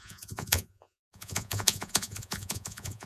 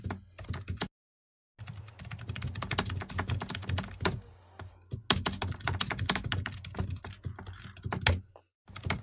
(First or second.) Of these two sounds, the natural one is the second